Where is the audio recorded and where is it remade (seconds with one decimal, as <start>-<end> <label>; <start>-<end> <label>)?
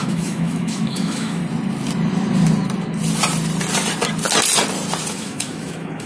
0.0-1.4 remade; 1.4-5.1 recorded; 5.1-6.1 remade